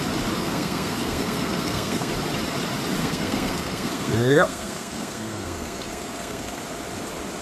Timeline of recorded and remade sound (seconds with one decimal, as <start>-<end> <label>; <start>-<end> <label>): 0.0-0.4 recorded; 0.4-2.1 remade; 2.1-3.0 recorded; 3.0-6.6 remade; 6.6-7.4 recorded

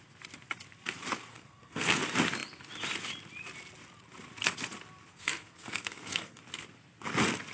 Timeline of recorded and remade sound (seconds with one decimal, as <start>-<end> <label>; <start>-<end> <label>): 0.0-1.3 recorded; 1.3-2.0 remade; 2.0-5.1 recorded; 5.1-6.4 remade; 6.4-7.5 recorded

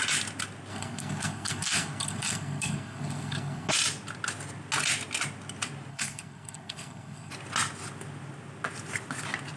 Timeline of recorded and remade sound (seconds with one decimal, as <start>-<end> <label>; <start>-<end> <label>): 0.0-0.7 recorded; 0.7-3.7 remade; 3.7-5.9 recorded; 5.9-7.3 remade; 7.3-9.6 recorded

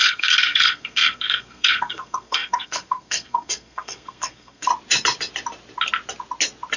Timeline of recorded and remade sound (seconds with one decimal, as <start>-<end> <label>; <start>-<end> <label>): 0.0-4.7 remade; 4.7-6.8 recorded